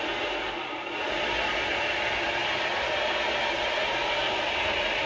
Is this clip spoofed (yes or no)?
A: no